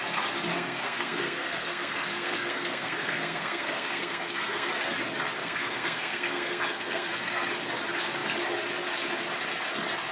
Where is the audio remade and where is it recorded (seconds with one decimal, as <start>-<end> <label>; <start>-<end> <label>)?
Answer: 0.0-0.5 recorded; 0.5-4.7 remade; 4.7-5.4 recorded; 5.4-7.5 remade; 7.5-10.1 recorded